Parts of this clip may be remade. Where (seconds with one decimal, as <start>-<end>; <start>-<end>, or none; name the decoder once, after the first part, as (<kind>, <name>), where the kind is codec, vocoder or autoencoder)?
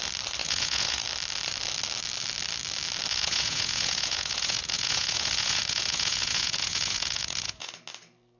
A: 0.4-1.0 (vocoder, Vocos); 3.1-7.7